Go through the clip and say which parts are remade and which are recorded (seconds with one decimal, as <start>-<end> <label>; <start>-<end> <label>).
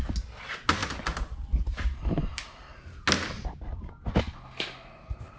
0.0-5.4 recorded